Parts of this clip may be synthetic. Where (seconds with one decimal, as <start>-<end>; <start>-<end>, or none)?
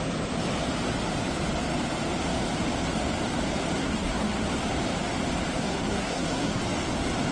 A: 3.8-4.7; 5.5-6.6